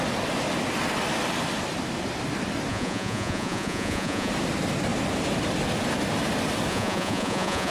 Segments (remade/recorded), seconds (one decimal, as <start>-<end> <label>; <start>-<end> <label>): 0.0-2.7 recorded; 2.7-4.3 remade; 4.3-6.7 recorded; 6.7-7.7 remade